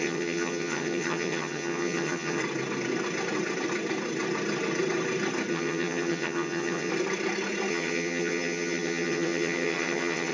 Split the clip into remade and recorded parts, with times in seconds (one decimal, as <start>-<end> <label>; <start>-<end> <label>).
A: 0.0-2.4 remade; 2.4-5.5 recorded; 5.5-6.9 remade; 6.9-7.7 recorded; 7.7-10.3 remade

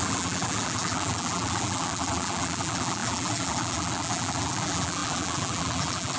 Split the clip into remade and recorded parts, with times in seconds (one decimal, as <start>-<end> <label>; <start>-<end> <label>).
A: 0.0-6.2 remade

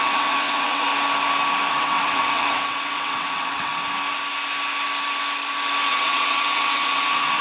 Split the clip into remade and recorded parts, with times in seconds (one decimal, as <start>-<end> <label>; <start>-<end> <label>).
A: 0.0-0.9 remade; 0.9-1.7 recorded; 1.7-3.7 remade; 3.7-5.9 recorded; 5.9-7.4 remade

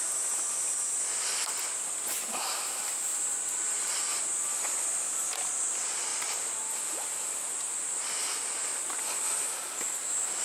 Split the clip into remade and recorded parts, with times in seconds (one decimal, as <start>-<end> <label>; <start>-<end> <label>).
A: 0.0-3.1 recorded; 3.1-4.3 remade; 4.3-6.1 recorded; 6.1-6.8 remade; 6.8-10.4 recorded

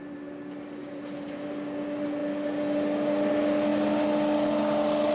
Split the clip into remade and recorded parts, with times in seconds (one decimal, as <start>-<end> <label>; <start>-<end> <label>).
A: 0.0-5.1 recorded

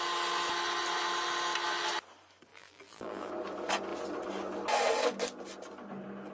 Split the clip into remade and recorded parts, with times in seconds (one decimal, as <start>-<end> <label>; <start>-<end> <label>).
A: 0.0-2.5 recorded; 2.5-3.3 remade; 3.3-6.3 recorded

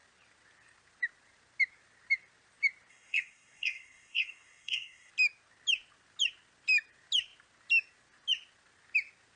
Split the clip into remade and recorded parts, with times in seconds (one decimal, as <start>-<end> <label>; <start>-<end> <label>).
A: 0.0-2.9 recorded; 2.9-5.1 remade; 5.1-9.4 recorded